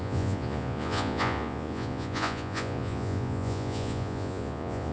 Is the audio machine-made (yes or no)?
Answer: yes